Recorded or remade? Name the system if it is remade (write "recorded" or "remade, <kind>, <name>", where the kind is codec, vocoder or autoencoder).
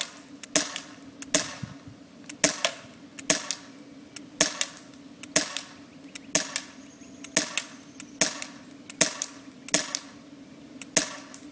recorded